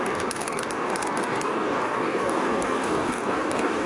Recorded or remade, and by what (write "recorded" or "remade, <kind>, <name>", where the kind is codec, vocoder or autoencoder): remade, codec, DAC